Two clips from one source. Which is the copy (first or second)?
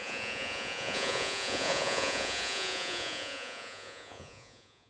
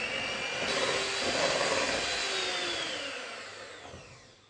first